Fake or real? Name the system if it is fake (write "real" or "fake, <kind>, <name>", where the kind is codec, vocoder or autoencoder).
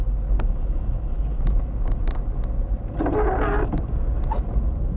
real